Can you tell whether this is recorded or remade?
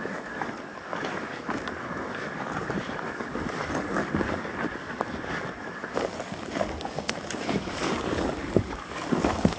remade